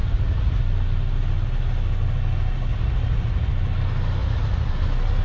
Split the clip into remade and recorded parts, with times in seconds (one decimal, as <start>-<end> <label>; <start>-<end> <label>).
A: 0.0-0.6 remade; 0.6-2.7 recorded; 2.7-3.5 remade; 3.5-4.2 recorded; 4.2-4.7 remade; 4.7-5.2 recorded